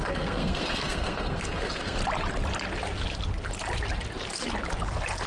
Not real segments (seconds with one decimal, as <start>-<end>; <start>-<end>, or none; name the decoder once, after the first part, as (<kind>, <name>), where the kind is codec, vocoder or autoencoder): 0.0-2.0 (codec, SNAC)